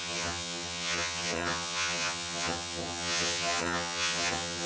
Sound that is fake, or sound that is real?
fake